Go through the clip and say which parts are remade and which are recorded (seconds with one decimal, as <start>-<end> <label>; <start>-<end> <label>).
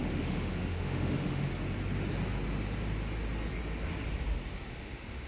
0.0-1.5 remade; 1.5-4.7 recorded; 4.7-5.3 remade